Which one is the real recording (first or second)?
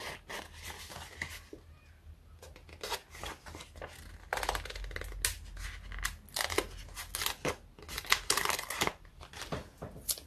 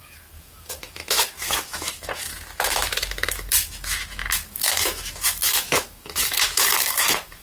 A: first